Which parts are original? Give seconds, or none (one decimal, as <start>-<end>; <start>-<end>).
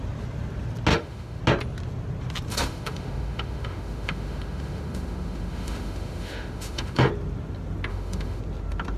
0.0-0.9; 1.4-2.5; 7.1-7.9; 8.4-9.0